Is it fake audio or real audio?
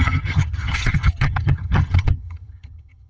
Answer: fake